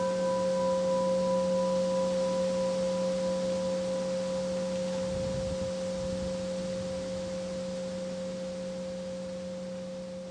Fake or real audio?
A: real